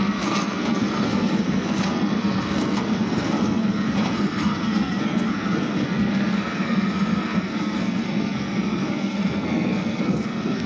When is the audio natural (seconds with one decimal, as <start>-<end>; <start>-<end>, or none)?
none